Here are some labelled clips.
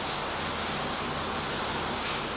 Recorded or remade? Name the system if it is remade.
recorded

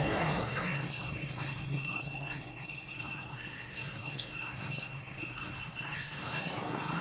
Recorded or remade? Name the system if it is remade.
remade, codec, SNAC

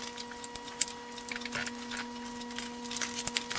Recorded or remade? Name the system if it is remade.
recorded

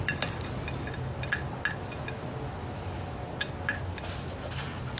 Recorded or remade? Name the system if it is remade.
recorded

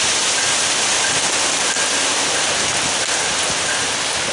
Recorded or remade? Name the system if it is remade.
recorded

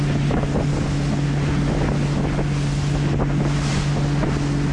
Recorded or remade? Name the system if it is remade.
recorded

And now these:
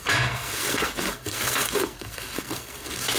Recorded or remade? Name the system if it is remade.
remade, codec, SNAC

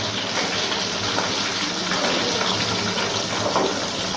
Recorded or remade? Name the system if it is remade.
recorded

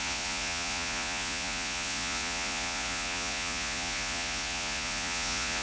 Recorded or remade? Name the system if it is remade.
remade, vocoder, Vocos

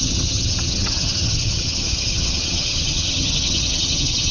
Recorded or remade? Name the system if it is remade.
remade, vocoder, HiFi-GAN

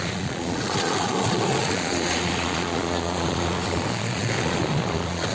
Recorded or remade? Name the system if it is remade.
remade, vocoder, Vocos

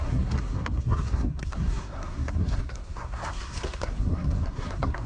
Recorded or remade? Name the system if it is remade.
remade, codec, SNAC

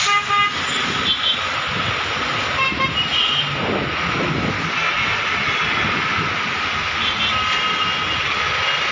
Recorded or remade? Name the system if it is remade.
recorded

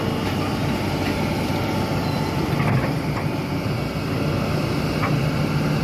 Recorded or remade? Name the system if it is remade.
recorded